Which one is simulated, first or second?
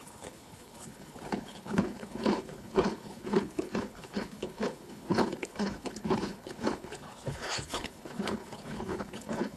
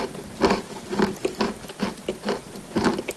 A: first